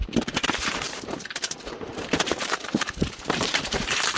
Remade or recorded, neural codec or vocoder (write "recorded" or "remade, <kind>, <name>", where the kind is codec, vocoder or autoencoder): remade, vocoder, BigVGAN v2